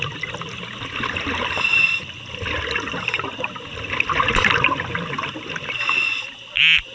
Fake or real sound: real